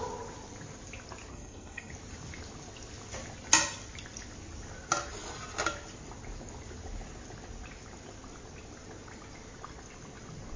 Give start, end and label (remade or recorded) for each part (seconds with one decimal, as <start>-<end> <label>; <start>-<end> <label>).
0.0-1.3 recorded; 1.3-1.9 remade; 1.9-10.6 recorded